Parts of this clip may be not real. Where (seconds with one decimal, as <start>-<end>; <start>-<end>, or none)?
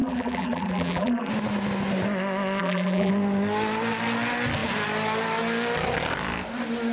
0.0-1.3; 2.6-3.1